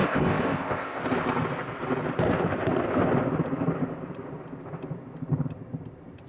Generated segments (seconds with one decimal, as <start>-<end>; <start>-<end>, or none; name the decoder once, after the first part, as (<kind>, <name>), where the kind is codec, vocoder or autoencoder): 0.0-1.0 (codec, ZipCodec)